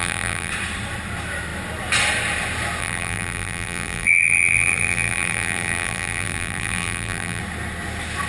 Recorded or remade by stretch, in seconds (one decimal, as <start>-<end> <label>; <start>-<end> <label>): 0.0-0.5 remade; 0.5-2.8 recorded; 2.8-7.4 remade; 7.4-8.3 recorded